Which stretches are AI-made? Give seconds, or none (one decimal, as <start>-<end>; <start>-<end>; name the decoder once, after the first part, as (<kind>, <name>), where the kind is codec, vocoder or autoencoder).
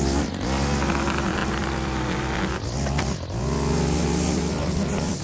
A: none